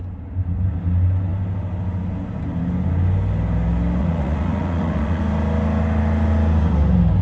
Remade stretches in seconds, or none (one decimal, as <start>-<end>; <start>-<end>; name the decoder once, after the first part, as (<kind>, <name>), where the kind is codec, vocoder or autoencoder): 4.0-5.2 (vocoder, Vocos)